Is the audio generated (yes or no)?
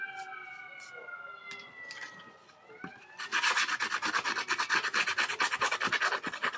no